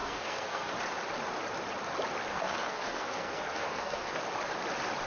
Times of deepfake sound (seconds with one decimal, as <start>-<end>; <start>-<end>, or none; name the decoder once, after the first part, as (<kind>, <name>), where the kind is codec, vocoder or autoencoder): 0.0-0.7 (codec, SNAC); 2.3-4.2